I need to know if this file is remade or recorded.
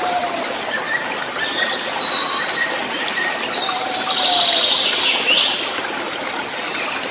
recorded